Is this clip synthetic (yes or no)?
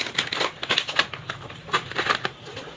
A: no